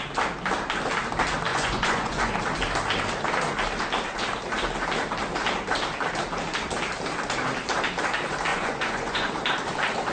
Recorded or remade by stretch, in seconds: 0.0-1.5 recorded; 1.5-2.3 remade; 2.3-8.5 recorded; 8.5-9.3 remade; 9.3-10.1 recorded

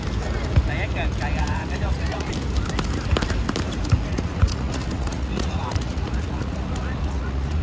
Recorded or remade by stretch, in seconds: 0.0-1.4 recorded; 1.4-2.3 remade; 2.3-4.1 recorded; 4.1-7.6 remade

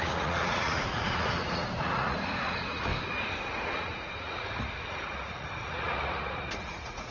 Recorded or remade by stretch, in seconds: 0.0-2.9 remade; 2.9-3.4 recorded; 3.4-7.1 remade

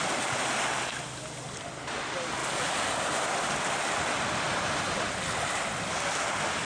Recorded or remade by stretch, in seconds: 0.0-6.6 recorded